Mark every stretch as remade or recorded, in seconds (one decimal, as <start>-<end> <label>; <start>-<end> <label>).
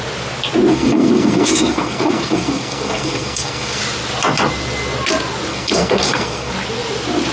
0.0-0.7 recorded; 0.7-3.8 remade; 3.8-5.5 recorded; 5.5-6.5 remade; 6.5-7.3 recorded